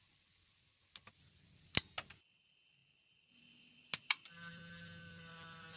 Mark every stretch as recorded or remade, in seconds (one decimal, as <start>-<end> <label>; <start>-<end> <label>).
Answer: 0.0-5.8 recorded